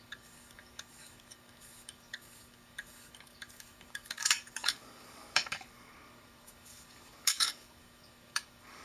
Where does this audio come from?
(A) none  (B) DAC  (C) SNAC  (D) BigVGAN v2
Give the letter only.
B